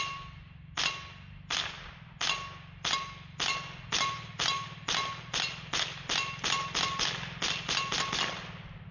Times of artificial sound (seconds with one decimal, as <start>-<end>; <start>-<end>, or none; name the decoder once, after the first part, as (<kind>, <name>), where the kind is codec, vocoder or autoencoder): none